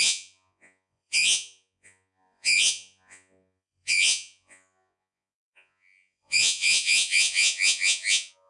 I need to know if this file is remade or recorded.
remade